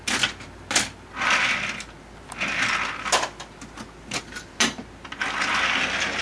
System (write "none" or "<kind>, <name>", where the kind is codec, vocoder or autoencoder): none